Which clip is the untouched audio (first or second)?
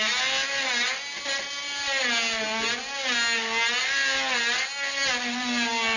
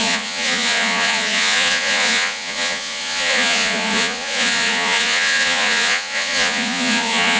first